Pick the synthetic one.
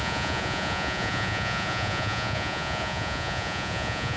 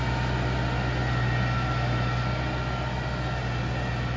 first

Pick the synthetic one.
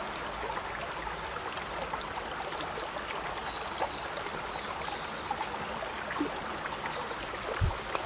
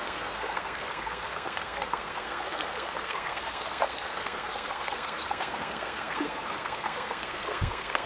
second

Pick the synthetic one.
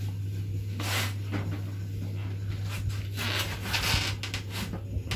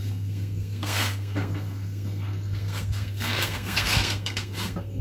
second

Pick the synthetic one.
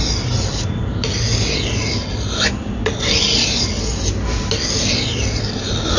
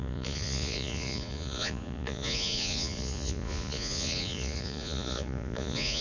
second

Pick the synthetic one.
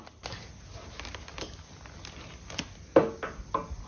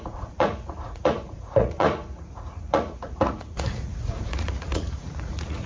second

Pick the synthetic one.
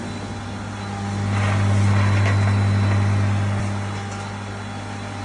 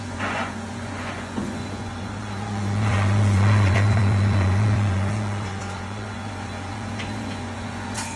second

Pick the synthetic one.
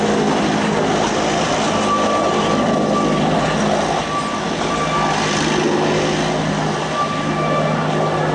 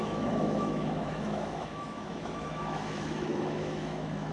second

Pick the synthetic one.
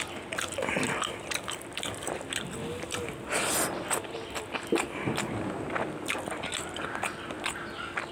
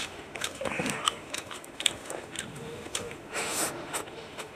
second